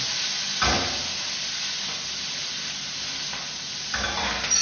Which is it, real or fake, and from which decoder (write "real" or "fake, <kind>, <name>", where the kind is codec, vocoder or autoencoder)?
real